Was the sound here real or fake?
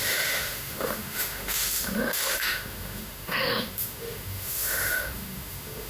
fake